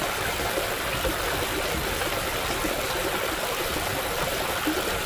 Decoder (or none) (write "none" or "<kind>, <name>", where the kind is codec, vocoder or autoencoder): none